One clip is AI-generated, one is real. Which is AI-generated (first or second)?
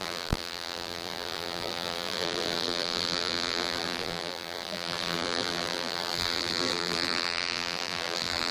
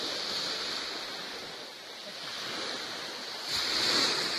first